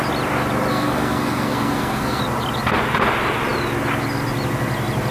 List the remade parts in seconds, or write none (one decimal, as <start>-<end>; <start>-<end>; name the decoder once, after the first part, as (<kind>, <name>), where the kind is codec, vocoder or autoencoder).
0.7-2.2 (codec, SNAC)

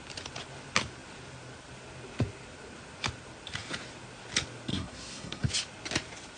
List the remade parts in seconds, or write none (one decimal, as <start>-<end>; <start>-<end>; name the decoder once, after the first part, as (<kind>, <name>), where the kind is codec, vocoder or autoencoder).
4.7-5.5 (codec, SNAC)

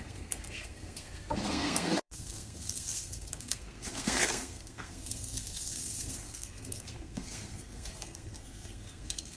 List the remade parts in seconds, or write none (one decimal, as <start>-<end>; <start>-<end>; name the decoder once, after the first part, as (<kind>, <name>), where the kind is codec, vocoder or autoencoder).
0.0-9.4 (codec, SNAC)

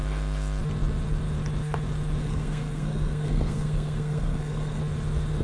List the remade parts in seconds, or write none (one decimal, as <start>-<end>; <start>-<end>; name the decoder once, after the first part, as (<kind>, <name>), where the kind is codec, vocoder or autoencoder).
2.2-4.8 (codec, SNAC)

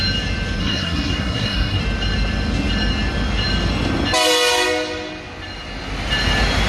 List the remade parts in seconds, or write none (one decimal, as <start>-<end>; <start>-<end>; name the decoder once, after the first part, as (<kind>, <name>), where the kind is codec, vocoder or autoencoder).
0.6-1.8 (codec, SNAC)

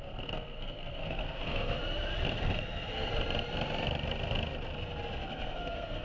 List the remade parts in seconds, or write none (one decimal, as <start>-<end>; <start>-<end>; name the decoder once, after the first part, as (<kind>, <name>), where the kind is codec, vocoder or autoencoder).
0.0-1.8 (codec, SNAC); 2.3-3.1; 5.3-6.0

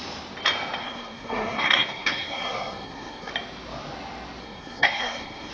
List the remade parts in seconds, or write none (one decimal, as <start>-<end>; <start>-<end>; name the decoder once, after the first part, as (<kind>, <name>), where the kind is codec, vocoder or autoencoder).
0.8-3.3 (codec, SNAC); 4.4-5.5